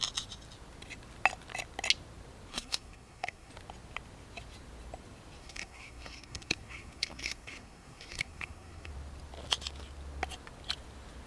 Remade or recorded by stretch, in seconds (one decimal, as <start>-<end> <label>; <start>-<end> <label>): 0.0-2.5 recorded; 2.5-3.5 remade; 3.5-5.4 recorded; 5.4-8.9 remade; 8.9-11.3 recorded

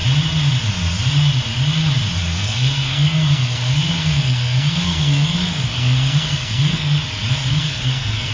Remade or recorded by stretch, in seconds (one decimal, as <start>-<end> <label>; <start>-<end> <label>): 0.0-2.2 recorded; 2.2-7.0 remade; 7.0-7.5 recorded; 7.5-8.3 remade

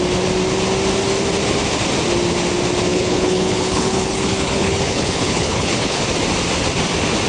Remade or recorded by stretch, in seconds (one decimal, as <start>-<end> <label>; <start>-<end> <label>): 0.0-2.9 recorded; 2.9-6.0 remade; 6.0-7.3 recorded

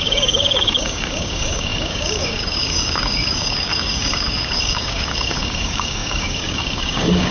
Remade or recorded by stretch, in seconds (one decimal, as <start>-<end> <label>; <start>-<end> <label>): 0.0-7.3 remade

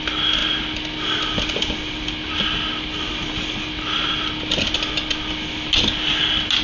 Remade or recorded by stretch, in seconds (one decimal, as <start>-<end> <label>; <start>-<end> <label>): 0.0-6.6 recorded

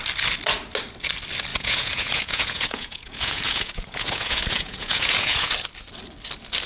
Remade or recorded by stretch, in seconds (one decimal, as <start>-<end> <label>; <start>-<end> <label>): 0.0-1.5 recorded; 1.5-5.5 remade; 5.5-6.7 recorded